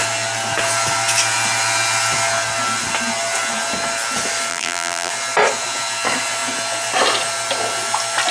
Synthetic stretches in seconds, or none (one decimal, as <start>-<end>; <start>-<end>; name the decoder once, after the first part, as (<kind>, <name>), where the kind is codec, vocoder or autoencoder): 4.5-5.1 (vocoder, BigVGAN v2)